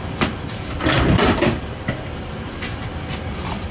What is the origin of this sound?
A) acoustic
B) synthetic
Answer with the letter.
B